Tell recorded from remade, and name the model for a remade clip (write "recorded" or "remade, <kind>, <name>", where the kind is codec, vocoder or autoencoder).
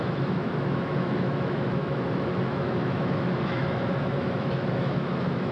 remade, autoencoder, DAC-VAE